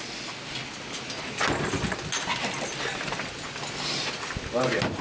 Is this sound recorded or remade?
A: recorded